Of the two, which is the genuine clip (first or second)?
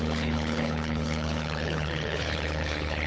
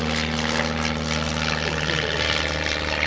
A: second